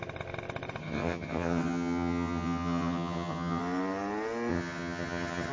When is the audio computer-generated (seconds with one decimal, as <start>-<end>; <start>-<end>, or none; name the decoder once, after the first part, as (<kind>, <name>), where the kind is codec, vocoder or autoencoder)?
0.8-3.6 (vocoder, HiFi-GAN); 4.5-5.5